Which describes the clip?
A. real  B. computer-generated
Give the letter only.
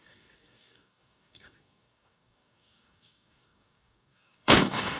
B